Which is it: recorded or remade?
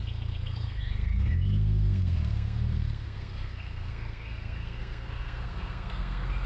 remade